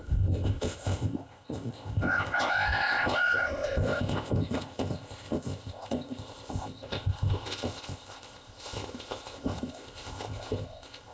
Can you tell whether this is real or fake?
fake